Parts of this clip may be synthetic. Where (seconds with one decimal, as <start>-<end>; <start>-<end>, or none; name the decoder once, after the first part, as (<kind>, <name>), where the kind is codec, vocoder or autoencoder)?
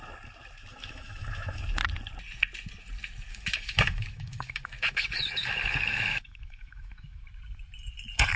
0.7-1.6 (autoencoder, DAC-VAE); 3.3-7.2